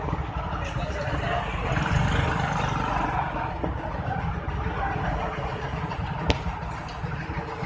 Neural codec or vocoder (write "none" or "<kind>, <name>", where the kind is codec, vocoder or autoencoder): none